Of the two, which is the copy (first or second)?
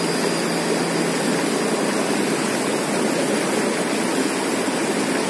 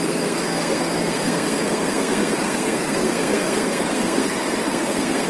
second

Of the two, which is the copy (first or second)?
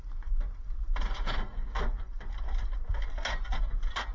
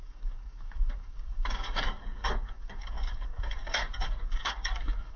second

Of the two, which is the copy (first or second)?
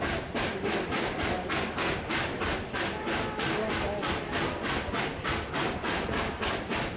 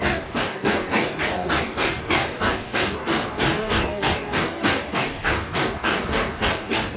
second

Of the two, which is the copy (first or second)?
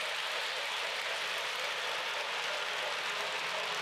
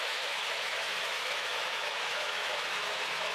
second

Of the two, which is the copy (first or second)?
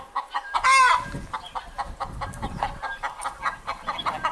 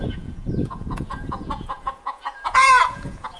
second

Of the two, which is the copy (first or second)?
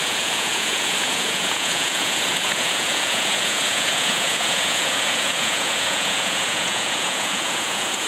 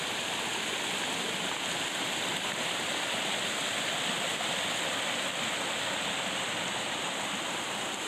first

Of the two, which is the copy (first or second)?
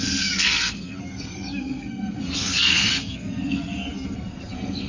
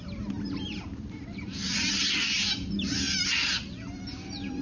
first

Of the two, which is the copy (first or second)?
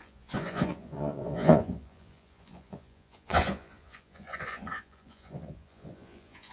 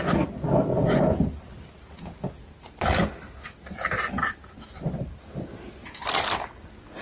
first